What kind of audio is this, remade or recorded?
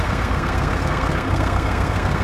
remade